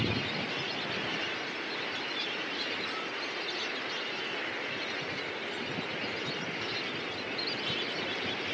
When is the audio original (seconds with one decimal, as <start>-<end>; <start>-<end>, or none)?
0.0-8.5